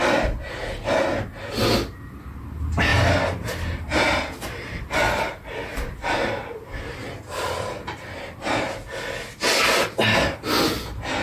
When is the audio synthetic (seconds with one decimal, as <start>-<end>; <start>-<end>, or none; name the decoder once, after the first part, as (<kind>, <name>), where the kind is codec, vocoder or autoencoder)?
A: 2.9-6.3 (vocoder, BigVGAN v2)